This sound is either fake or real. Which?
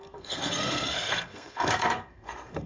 fake